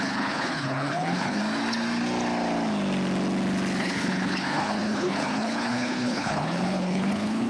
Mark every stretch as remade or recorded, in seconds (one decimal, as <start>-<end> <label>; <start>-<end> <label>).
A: 0.0-1.4 remade; 1.4-3.8 recorded; 3.8-7.5 remade